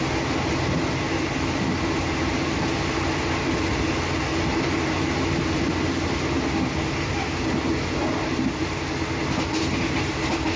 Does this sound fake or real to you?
real